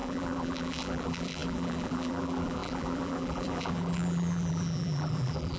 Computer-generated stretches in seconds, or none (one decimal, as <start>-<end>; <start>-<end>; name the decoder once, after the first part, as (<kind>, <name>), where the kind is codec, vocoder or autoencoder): 0.0-5.6 (vocoder, BigVGAN v2)